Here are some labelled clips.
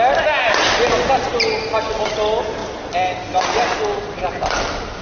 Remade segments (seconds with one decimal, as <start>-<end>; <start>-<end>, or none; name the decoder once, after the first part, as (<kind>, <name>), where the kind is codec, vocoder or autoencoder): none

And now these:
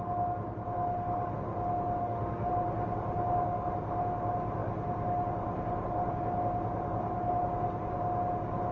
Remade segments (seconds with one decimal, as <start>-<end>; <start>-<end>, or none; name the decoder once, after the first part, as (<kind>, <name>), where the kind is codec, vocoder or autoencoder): 2.0-2.5 (autoencoder, DAC-VAE)

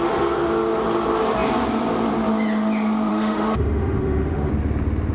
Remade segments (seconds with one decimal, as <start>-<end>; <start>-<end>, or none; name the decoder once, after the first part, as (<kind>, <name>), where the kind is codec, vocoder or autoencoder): 3.1-4.5 (autoencoder, DAC-VAE)